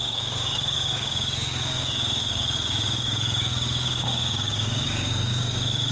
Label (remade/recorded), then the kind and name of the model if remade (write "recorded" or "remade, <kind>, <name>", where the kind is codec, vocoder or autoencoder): remade, codec, DAC